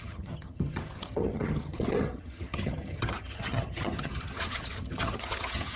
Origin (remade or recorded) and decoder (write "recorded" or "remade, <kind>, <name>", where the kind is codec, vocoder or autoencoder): remade, vocoder, HiFi-GAN